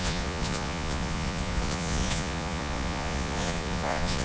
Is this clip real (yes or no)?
no